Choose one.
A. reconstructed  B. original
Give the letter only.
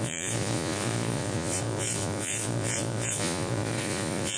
A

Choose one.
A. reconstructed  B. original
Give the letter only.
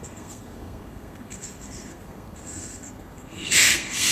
A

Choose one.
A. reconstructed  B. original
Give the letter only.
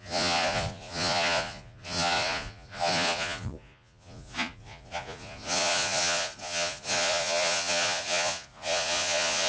A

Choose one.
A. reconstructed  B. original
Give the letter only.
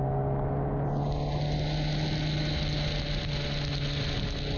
B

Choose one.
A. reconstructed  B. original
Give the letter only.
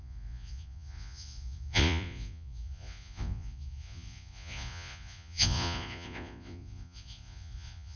A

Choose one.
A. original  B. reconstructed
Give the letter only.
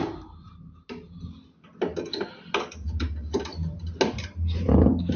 A